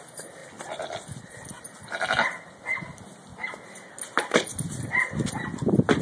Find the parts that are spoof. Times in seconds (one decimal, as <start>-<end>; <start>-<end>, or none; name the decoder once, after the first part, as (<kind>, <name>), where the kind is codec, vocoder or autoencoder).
none